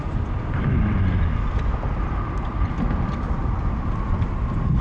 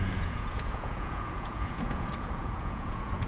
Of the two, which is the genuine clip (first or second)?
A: first